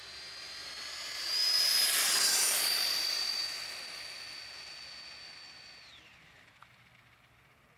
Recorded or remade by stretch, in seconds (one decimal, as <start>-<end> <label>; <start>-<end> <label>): 0.0-7.8 recorded